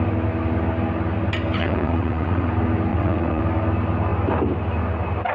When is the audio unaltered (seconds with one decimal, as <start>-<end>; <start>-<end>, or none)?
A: 0.0-1.6; 2.5-2.9; 3.4-5.3